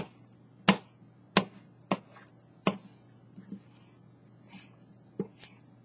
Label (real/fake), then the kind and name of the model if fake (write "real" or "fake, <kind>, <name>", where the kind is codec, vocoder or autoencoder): real